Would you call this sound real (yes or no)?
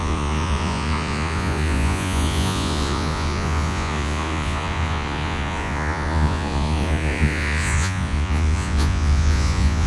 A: no